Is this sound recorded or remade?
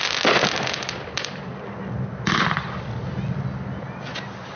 recorded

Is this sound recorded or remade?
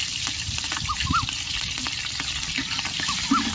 recorded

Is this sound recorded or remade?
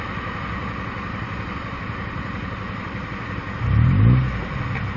recorded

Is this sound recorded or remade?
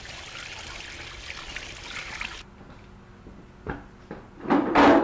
recorded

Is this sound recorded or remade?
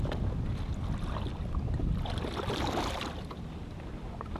recorded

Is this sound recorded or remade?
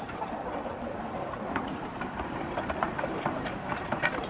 remade